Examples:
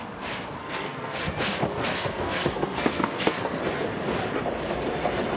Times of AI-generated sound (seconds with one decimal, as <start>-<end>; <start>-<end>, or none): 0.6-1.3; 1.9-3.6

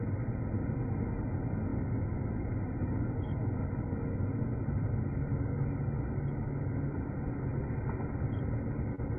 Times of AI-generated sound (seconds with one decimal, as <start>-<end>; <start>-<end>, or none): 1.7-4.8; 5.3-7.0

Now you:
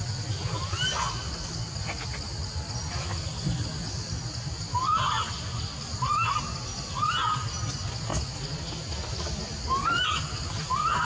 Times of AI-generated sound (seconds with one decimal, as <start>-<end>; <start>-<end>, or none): none